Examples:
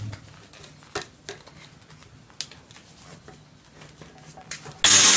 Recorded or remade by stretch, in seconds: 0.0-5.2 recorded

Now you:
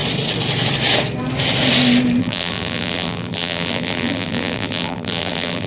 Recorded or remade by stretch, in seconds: 0.0-2.2 recorded; 2.2-5.7 remade

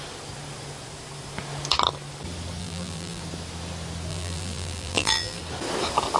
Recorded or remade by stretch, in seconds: 0.0-2.6 recorded; 2.6-3.2 remade; 3.2-4.1 recorded; 4.1-5.4 remade; 5.4-6.2 recorded

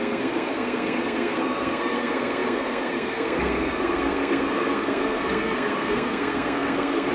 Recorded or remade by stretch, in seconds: 0.0-7.1 remade

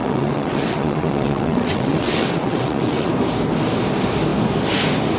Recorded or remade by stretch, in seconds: 0.0-3.1 remade; 3.1-5.2 recorded

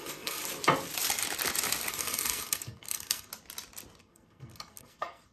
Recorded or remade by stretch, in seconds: 0.0-0.4 remade; 0.4-1.9 recorded; 1.9-3.3 remade; 3.3-4.0 recorded; 4.0-5.3 remade